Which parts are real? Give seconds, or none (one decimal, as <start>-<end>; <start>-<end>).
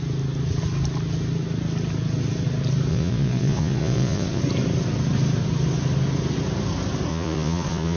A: 0.0-2.9; 4.4-7.1